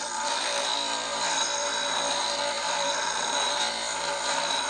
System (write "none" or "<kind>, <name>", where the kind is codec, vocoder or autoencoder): vocoder, BigVGAN v2